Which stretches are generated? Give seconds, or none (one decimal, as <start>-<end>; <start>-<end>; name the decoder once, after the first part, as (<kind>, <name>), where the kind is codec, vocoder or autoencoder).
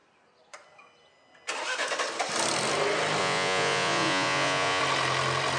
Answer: 3.2-4.8 (vocoder, Vocos)